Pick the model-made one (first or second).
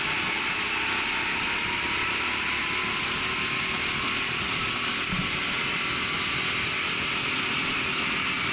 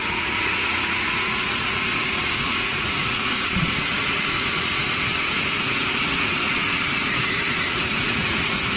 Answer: second